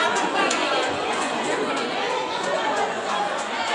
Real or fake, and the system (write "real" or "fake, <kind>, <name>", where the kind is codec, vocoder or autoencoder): fake, vocoder, Vocos